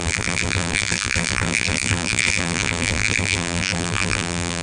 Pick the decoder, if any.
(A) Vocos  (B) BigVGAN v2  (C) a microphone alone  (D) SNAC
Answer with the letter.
B